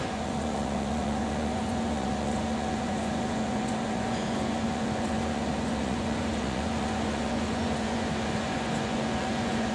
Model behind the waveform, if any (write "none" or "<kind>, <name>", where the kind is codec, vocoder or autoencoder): vocoder, Vocos